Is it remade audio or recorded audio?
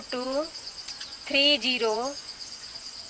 remade